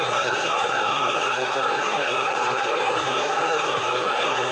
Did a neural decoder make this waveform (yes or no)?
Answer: yes